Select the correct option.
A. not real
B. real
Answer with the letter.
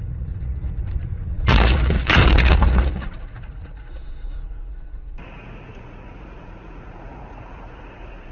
A